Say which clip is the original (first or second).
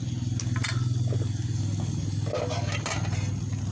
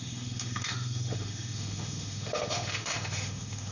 first